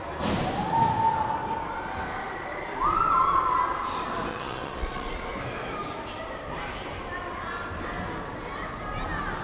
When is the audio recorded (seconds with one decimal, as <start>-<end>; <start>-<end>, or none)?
0.0-4.3; 5.2-9.4